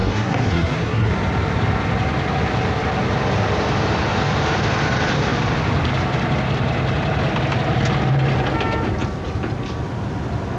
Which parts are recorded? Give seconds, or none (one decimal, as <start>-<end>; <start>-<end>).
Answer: 1.1-10.6